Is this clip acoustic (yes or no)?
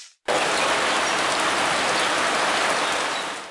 yes